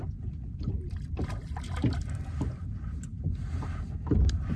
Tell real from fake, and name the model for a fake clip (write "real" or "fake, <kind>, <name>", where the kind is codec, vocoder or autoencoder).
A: real